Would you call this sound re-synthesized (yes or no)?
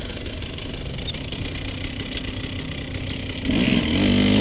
no